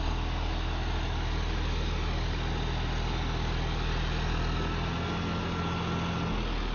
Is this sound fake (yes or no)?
no